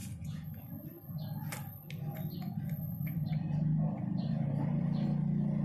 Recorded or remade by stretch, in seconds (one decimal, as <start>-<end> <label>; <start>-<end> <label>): 0.0-0.6 remade; 0.6-5.6 recorded